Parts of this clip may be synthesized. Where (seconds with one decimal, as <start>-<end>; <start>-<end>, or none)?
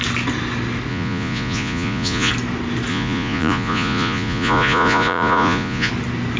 0.9-2.3; 2.9-5.9